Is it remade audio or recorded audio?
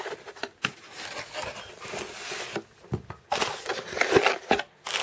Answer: recorded